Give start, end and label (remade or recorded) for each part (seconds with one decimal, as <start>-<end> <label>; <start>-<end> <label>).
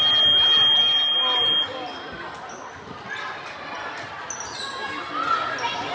0.0-5.9 recorded